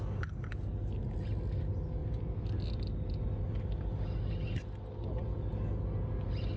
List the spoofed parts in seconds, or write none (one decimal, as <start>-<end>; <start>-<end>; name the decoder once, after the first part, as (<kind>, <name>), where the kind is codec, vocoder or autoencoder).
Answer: none